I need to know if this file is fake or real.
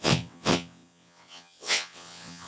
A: fake